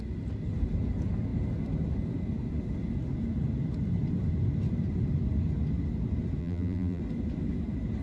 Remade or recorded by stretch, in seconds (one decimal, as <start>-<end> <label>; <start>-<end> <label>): 0.0-6.4 recorded; 6.4-7.0 remade; 7.0-8.0 recorded